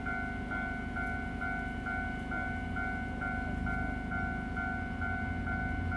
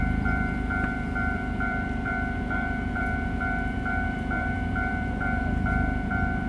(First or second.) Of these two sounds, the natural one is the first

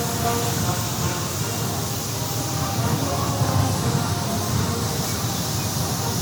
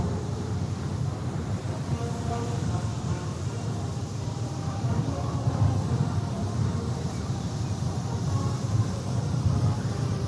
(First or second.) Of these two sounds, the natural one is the first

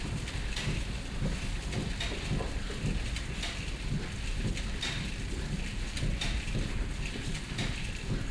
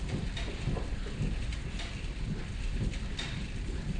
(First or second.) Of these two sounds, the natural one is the first